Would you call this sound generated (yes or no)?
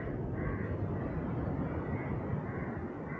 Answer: no